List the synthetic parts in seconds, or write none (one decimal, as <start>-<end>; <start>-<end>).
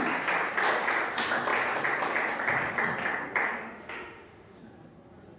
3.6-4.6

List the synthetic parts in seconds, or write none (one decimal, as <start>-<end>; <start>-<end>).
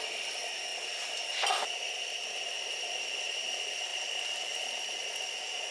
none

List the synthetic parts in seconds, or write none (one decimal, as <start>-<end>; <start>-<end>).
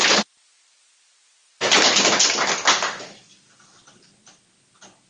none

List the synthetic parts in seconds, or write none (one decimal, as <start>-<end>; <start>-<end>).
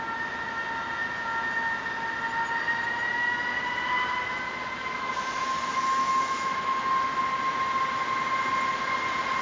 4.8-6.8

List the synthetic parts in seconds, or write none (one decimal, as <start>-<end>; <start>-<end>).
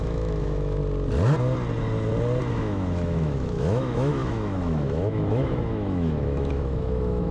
0.0-0.8; 2.4-7.3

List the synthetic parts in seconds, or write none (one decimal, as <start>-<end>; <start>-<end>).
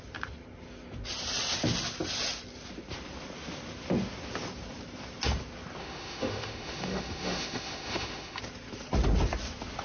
5.8-8.4